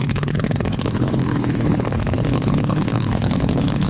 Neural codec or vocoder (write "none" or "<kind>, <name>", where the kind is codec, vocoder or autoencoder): codec, HILCodec